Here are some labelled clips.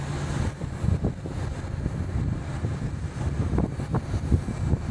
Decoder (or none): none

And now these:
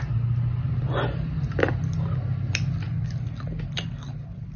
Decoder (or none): none